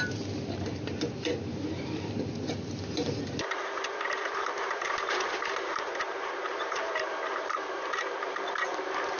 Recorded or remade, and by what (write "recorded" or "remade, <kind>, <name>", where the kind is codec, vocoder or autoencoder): remade, vocoder, BigVGAN v2